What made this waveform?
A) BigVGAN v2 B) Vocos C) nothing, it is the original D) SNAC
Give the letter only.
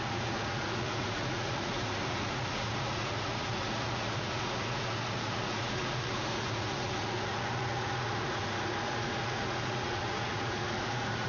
B